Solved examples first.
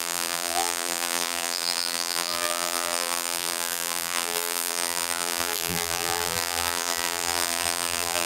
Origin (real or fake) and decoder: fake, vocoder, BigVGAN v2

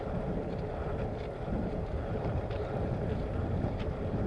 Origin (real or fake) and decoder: fake, vocoder, BigVGAN v2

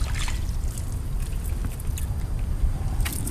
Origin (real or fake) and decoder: fake, vocoder, BigVGAN v2